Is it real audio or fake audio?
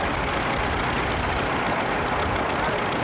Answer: real